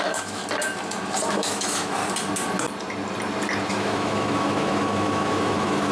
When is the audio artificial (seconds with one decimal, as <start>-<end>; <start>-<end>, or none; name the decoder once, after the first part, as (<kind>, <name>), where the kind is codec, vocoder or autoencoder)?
0.0-0.4 (autoencoder, DAC-VAE); 1.3-2.0; 3.7-5.9